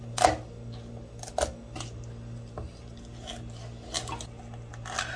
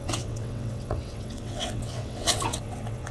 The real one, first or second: first